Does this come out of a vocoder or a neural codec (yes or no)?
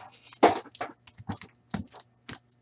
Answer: no